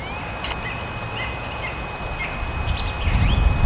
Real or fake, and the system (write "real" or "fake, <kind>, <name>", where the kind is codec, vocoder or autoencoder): real